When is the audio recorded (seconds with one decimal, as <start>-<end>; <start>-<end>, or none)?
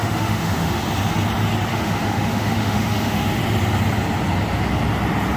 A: 0.8-1.7; 3.4-5.4